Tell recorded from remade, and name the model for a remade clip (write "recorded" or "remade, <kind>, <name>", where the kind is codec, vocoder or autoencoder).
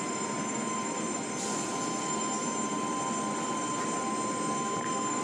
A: recorded